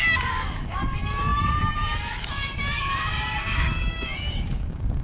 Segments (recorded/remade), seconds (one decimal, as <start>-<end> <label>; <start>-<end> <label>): 0.0-5.0 remade